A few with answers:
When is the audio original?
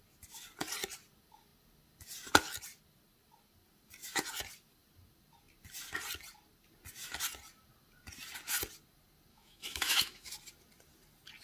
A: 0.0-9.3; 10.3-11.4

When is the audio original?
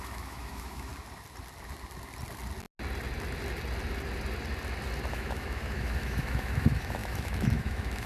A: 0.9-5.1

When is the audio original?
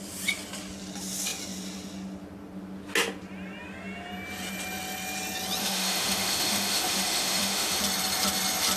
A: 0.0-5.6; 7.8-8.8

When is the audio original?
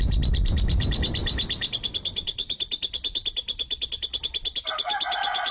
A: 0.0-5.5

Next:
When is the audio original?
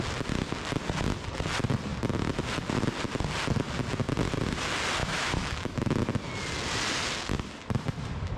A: 0.0-5.0; 5.8-8.4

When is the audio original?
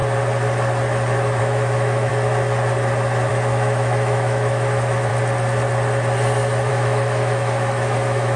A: 0.0-1.4; 2.1-3.3; 5.1-6.7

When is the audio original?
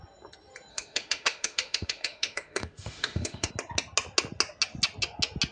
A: 0.0-0.7; 3.5-5.5